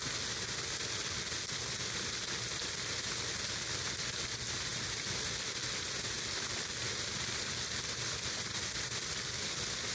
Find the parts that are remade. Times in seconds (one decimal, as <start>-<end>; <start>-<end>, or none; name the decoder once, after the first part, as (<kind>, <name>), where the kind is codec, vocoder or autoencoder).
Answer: none

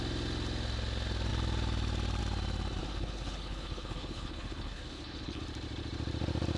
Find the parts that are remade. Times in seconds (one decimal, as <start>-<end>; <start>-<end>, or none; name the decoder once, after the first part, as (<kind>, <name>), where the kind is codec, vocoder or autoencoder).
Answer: 2.8-5.4 (codec, HILCodec)

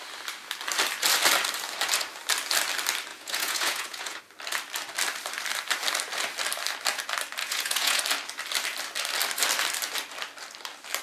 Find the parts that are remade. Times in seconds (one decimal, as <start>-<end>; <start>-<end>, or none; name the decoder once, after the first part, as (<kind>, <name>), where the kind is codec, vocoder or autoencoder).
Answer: 3.1-4.2 (vocoder, Vocos); 7.4-8.0

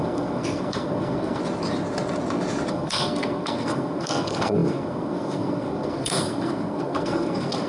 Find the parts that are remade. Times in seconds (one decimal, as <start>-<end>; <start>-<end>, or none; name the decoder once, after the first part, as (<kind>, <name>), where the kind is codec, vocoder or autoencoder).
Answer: 0.0-1.4 (codec, SNAC); 2.7-7.7